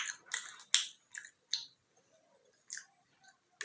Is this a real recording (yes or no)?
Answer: yes